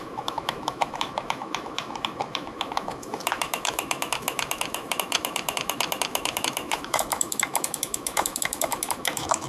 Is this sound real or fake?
fake